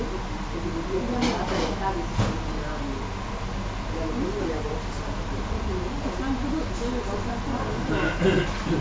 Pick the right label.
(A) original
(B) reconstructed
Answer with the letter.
A